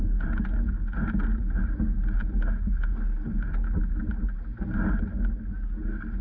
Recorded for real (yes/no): yes